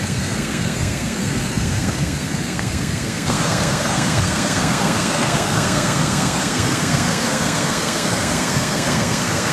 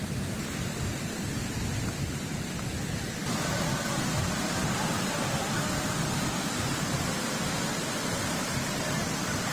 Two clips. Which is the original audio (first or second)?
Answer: second